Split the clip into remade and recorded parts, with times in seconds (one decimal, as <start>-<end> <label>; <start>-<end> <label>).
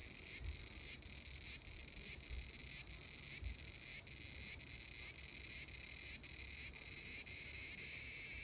0.0-8.4 recorded